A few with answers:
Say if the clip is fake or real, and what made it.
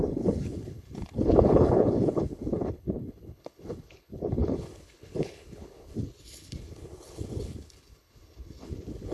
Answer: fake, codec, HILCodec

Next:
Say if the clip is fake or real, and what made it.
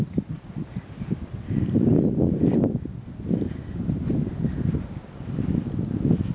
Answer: real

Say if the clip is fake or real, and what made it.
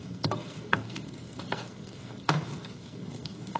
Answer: fake, codec, SNAC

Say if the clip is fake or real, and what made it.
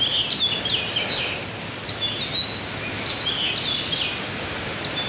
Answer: real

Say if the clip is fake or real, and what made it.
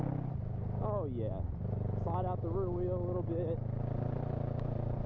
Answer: real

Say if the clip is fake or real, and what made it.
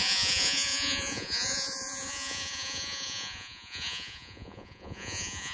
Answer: fake, vocoder, Vocos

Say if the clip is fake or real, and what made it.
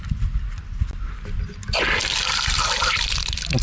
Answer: real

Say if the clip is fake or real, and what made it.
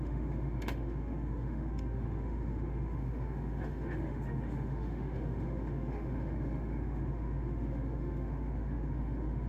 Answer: fake, autoencoder, DAC-VAE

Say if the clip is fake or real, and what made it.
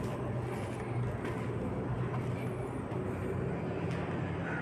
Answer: real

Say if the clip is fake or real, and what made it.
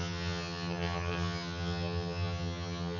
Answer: fake, vocoder, HiFi-GAN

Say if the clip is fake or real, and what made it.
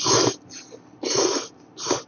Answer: real